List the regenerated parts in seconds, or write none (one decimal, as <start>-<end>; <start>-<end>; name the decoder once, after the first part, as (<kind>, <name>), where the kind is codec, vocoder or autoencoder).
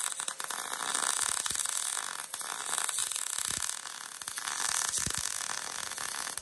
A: none